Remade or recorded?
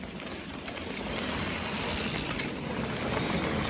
recorded